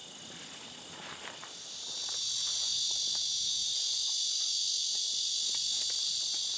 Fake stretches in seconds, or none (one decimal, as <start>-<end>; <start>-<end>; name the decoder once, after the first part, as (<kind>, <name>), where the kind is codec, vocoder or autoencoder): none